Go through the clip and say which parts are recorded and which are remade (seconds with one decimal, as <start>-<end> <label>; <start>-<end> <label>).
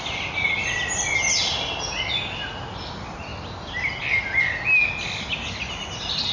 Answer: 0.0-6.3 recorded